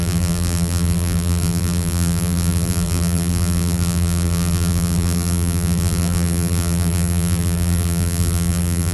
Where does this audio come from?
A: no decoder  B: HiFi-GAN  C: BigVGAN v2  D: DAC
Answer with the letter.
C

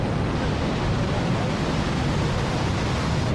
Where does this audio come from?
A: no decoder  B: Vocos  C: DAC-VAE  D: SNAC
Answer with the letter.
A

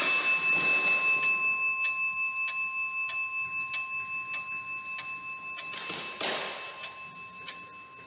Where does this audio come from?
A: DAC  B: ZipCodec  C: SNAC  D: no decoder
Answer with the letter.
D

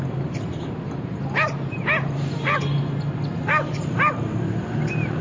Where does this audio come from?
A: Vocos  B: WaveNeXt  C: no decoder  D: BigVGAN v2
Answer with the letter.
C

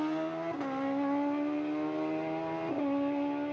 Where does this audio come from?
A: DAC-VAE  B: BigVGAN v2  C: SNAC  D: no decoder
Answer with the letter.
D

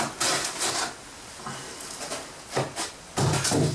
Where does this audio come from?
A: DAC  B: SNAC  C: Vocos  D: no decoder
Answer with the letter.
D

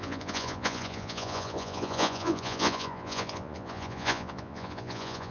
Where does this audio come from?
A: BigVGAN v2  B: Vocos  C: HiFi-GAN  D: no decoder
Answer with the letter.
B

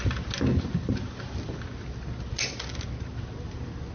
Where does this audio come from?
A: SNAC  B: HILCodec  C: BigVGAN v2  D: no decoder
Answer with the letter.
D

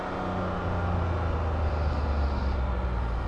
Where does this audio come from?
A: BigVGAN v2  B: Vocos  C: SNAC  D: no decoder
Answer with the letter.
D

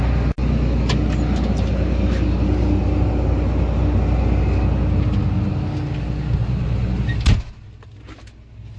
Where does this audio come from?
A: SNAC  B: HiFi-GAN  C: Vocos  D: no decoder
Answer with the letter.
D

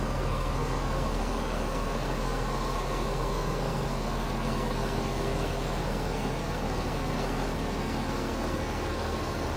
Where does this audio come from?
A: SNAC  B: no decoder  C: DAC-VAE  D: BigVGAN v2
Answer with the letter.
A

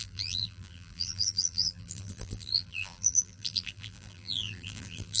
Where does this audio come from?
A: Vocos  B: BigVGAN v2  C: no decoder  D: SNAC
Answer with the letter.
B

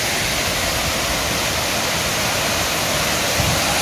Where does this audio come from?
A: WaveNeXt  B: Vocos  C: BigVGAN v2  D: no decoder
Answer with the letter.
D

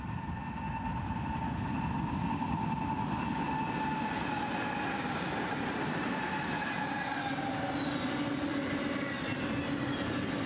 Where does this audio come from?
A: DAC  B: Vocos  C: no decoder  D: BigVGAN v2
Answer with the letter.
C